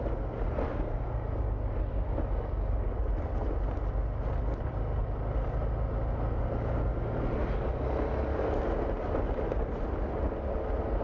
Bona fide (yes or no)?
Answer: yes